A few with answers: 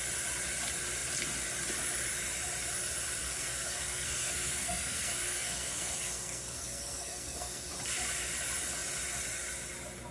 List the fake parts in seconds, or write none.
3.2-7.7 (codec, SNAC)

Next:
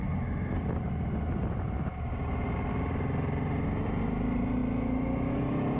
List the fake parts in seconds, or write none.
none

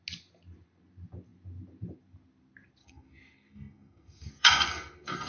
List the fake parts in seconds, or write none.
2.8-5.3 (codec, SNAC)

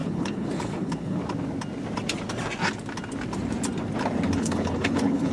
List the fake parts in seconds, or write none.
0.0-1.2 (codec, HILCodec); 4.4-5.3

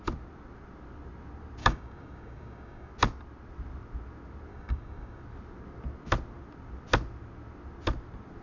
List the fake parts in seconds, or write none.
1.6-2.9 (codec, DAC); 4.5-5.2

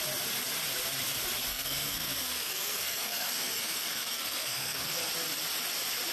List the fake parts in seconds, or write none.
1.5-5.1 (codec, SNAC)